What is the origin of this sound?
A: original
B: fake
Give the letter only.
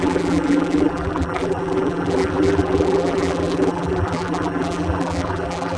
B